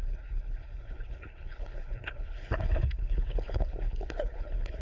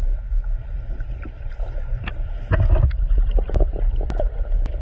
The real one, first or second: second